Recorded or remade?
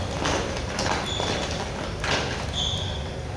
recorded